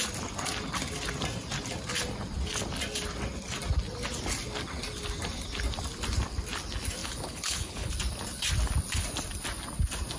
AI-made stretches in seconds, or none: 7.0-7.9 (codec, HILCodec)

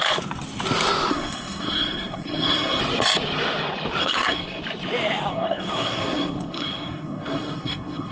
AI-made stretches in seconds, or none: 1.1-2.8 (codec, SNAC); 4.0-4.6; 5.3-8.1

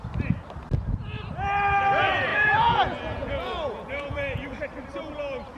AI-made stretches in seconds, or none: 2.3-4.6 (vocoder, Vocos)

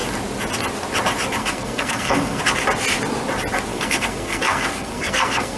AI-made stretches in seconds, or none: 1.4-2.4 (codec, SNAC); 3.7-5.6

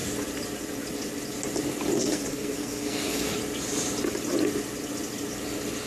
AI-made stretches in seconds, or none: 2.0-3.4 (codec, SNAC)

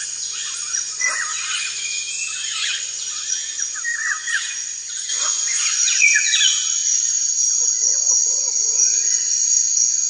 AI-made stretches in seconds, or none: 0.0-10.1 (vocoder, Vocos)

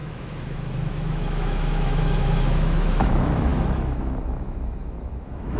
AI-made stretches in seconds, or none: 0.0-5.6 (autoencoder, DAC-VAE)

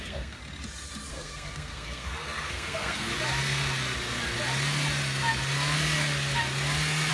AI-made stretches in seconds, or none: 0.0-0.4 (codec, SNAC); 1.1-3.1